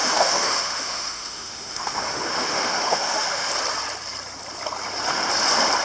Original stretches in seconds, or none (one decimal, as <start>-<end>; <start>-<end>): 3.5-5.8